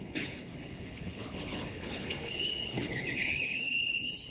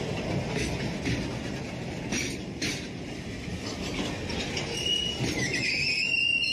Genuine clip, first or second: second